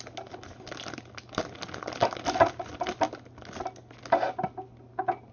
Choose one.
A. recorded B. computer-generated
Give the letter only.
A